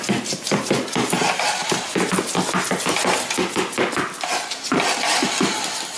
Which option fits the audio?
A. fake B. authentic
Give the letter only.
B